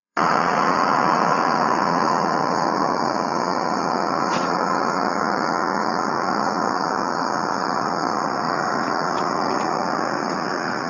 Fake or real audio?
fake